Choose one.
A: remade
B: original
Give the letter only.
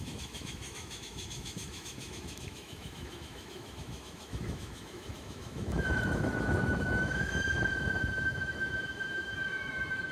A